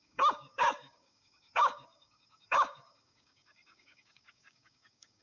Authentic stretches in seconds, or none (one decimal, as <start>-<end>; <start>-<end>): none